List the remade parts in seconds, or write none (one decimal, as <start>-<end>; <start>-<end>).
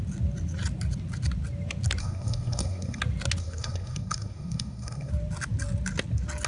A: 2.0-3.0; 3.4-5.1